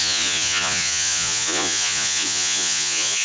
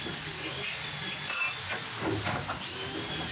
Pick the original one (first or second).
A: second